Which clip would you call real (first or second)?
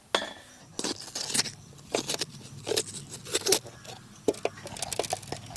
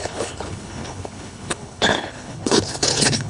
first